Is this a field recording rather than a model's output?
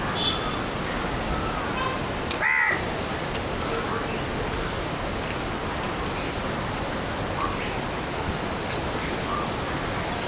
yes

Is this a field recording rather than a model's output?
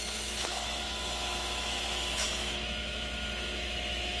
no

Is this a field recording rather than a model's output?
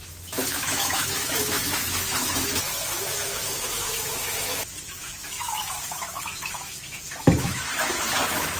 no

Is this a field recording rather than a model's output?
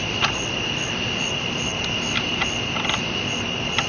yes